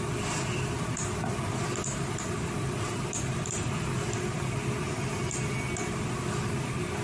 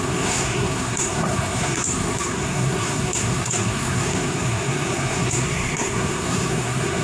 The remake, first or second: second